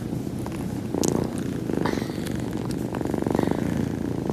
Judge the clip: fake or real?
real